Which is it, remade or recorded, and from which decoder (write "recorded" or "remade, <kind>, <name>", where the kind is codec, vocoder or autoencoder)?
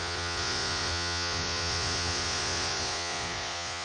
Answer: remade, vocoder, Vocos